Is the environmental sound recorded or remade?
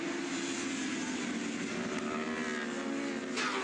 recorded